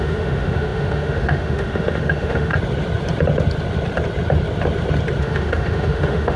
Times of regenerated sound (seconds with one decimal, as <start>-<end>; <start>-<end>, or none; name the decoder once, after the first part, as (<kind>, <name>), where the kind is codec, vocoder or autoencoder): 0.0-2.5 (autoencoder, DAC-VAE); 5.2-6.4